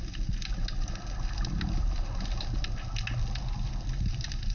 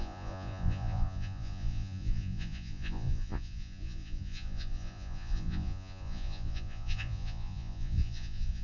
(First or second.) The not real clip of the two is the second